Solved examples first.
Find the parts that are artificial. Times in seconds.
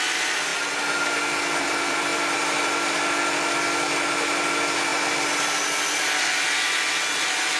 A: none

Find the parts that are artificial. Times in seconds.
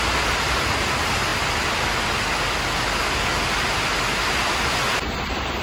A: none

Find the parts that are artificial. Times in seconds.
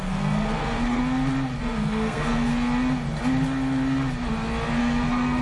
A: 0.0-1.0 (codec, SNAC); 1.6-2.5; 4.8-5.4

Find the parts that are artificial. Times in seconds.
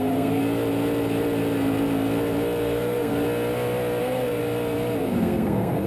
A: 0.0-0.4 (codec, SNAC); 2.6-3.1; 4.0-4.4; 5.0-5.9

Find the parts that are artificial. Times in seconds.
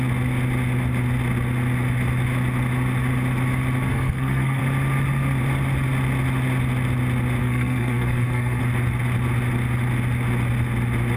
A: 3.9-4.6 (codec, SNAC); 7.4-8.6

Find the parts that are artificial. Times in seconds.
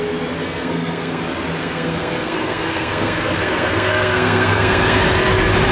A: 0.4-1.2 (codec, SNAC); 1.6-5.0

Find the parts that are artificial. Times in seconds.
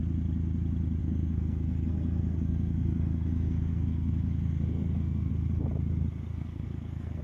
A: 1.0-5.3 (codec, SNAC); 6.3-7.2